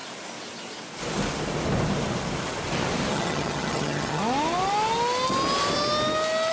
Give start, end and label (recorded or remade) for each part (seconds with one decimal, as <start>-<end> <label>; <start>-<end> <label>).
0.0-3.1 recorded; 3.1-4.2 remade; 4.2-6.5 recorded